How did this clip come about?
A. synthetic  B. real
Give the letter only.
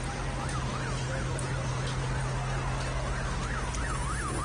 B